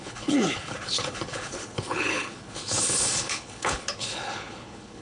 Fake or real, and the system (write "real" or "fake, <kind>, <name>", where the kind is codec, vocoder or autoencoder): fake, codec, HILCodec